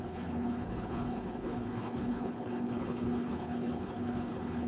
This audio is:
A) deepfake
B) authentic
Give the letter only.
A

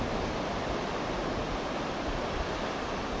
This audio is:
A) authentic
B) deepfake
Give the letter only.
A